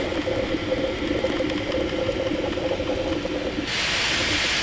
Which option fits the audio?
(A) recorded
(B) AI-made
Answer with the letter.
A